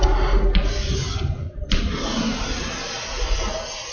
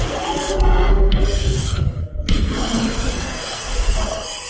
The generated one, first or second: second